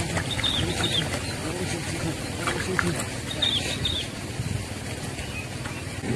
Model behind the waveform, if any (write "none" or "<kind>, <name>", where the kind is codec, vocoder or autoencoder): none